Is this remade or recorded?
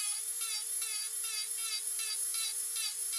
recorded